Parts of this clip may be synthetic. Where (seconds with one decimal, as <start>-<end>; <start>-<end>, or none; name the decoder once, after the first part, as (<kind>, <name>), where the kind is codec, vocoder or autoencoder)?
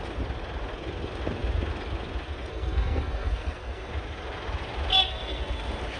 2.5-3.9 (codec, SNAC); 4.9-5.4